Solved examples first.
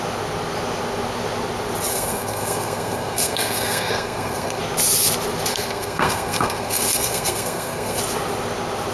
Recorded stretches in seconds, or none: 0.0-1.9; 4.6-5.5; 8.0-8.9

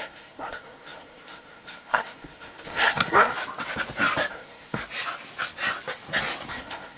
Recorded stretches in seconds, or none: 3.3-4.3; 4.8-6.5

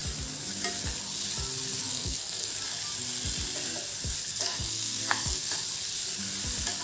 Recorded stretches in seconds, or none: 0.0-1.8; 2.5-4.3; 5.5-6.8

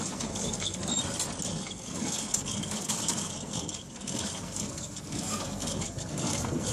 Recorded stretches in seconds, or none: 0.9-1.5